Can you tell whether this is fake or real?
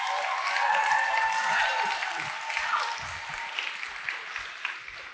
real